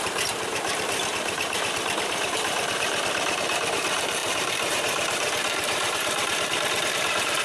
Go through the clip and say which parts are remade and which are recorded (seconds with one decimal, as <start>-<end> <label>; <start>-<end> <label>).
0.0-7.4 remade